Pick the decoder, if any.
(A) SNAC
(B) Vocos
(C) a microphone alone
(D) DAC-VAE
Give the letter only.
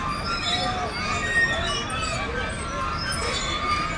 C